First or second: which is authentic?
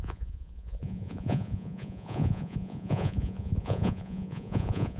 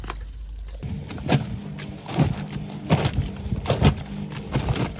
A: second